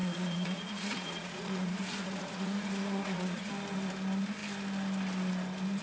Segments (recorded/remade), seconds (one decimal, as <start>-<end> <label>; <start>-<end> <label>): 0.0-3.5 remade; 3.5-5.8 recorded

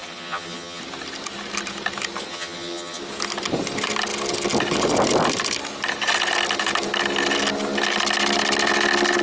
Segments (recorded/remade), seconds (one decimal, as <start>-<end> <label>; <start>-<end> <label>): 0.0-0.8 remade; 0.8-2.3 recorded; 2.3-3.0 remade; 3.0-9.2 recorded

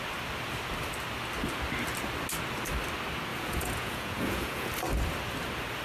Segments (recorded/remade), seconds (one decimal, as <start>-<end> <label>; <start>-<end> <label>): 0.0-3.3 recorded; 3.3-4.7 remade; 4.7-5.8 recorded

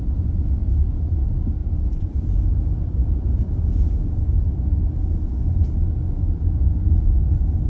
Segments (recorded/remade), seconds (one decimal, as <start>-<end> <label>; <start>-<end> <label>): 0.0-0.6 recorded; 0.6-1.2 remade; 1.2-1.6 recorded; 1.6-2.6 remade; 2.6-3.0 recorded; 3.0-3.6 remade; 3.6-7.7 recorded

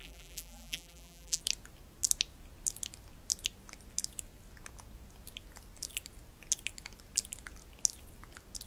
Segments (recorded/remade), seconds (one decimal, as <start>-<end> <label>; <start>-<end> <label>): 0.0-1.4 remade; 1.4-8.7 recorded